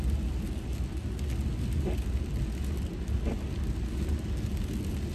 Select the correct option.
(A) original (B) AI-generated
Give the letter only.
A